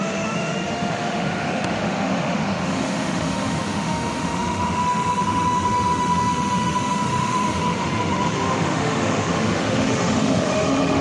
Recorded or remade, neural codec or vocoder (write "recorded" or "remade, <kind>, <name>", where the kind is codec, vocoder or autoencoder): remade, autoencoder, DAC-VAE